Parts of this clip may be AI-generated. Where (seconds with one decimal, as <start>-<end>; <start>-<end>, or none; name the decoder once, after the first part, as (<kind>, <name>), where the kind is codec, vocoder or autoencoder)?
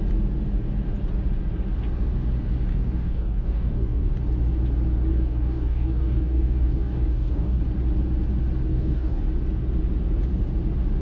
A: 2.7-4.1 (codec, DAC); 5.1-7.6; 8.7-9.2